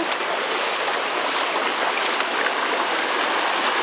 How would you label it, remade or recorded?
recorded